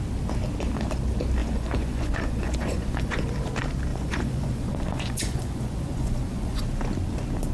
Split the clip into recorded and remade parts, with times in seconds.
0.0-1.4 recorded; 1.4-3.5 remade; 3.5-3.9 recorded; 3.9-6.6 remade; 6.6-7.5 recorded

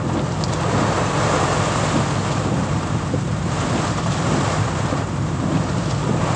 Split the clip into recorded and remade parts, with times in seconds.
0.0-2.6 recorded; 2.6-6.0 remade; 6.0-6.4 recorded